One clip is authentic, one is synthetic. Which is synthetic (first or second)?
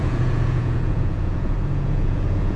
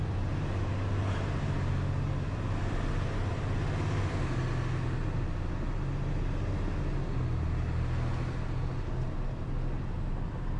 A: first